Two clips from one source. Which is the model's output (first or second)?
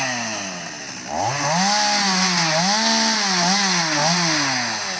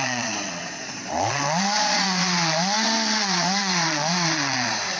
second